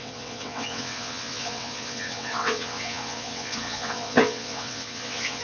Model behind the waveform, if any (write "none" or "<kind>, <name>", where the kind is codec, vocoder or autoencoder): vocoder, WaveNeXt